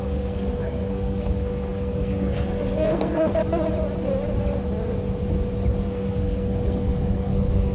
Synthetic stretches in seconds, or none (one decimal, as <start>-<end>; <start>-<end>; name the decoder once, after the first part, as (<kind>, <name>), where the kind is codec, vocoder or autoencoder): 0.0-3.4 (codec, SNAC); 5.8-7.7